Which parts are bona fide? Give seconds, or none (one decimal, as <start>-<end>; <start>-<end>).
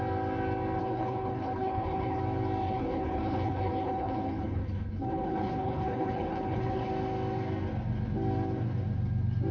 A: 0.0-0.8; 2.2-2.6; 6.9-9.5